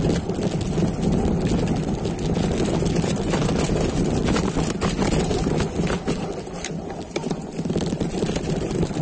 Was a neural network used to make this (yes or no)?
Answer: no